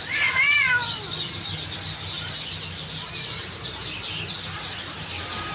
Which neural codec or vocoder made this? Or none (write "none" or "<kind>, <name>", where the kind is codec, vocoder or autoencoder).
none